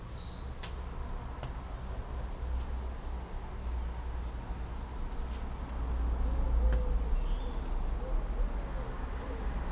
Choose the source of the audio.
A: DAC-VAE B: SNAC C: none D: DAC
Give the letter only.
C